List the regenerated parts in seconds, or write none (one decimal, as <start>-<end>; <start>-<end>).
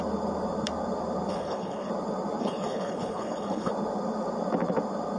1.3-1.9; 2.4-3.7